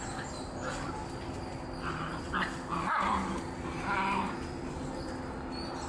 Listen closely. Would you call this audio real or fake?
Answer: real